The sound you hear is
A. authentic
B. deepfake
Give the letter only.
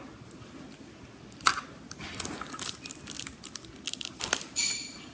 A